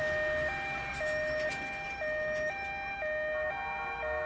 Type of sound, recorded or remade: recorded